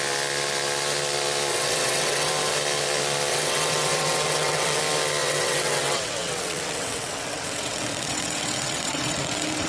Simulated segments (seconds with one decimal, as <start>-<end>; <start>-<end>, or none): 1.5-2.3; 3.3-4.8; 5.2-9.7